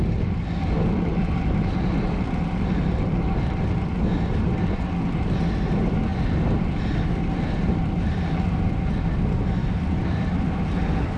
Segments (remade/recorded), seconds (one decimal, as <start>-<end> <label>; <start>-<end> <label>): 0.0-11.2 recorded

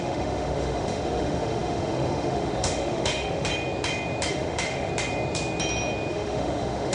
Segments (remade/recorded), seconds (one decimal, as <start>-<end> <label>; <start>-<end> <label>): 0.0-3.5 remade; 3.5-4.3 recorded; 4.3-4.9 remade; 4.9-6.1 recorded; 6.1-6.9 remade

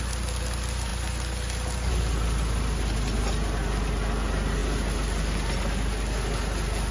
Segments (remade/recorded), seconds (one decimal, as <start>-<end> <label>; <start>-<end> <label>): 0.0-6.9 recorded

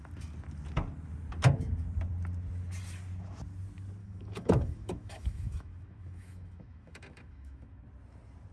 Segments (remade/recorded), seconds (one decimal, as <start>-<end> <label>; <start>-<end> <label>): 0.0-4.0 recorded; 4.0-7.8 remade; 7.8-8.5 recorded

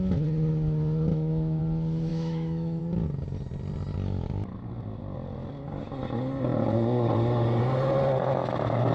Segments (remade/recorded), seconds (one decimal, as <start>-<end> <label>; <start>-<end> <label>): 0.0-1.1 recorded; 1.1-1.6 remade; 1.6-2.1 recorded; 2.1-2.8 remade; 2.8-8.9 recorded

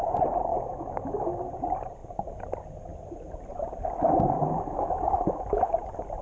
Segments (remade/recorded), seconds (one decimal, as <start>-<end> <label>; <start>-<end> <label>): 0.0-0.5 recorded; 0.5-1.4 remade; 1.4-4.4 recorded; 4.4-5.7 remade; 5.7-6.2 recorded

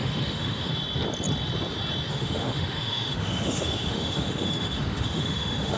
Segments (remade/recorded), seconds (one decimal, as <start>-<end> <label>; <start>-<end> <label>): 0.0-0.7 remade; 0.7-2.1 recorded; 2.1-5.8 remade

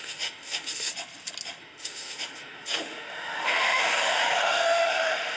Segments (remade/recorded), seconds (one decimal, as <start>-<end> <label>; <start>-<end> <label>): 0.0-0.9 remade; 0.9-1.6 recorded; 1.6-5.4 remade